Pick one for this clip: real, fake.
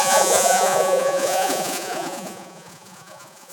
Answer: fake